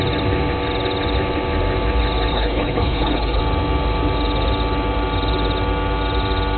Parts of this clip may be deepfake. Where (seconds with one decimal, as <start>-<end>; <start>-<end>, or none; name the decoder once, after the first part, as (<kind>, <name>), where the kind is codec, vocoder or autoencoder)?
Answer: 2.3-3.4 (codec, HILCodec)